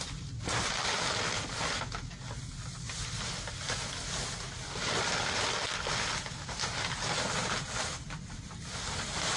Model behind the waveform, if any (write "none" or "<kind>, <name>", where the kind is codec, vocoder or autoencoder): none